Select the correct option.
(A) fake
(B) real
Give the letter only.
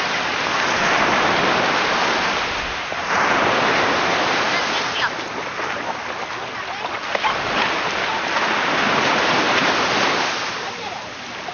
B